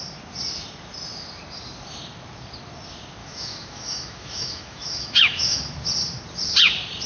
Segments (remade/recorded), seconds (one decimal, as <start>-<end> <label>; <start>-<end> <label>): 0.0-3.2 recorded; 3.2-5.6 remade; 5.6-7.1 recorded